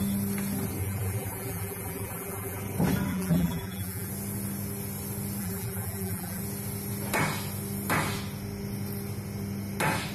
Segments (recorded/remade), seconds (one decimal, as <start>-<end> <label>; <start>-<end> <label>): 0.0-0.8 recorded; 0.8-2.6 remade; 2.6-3.1 recorded; 3.1-4.1 remade; 4.1-5.4 recorded; 5.4-6.4 remade; 6.4-10.1 recorded